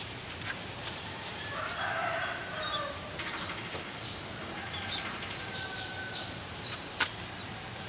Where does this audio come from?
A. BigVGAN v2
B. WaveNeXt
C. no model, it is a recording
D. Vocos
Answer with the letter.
A